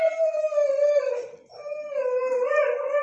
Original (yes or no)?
no